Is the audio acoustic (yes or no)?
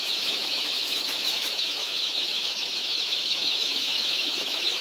no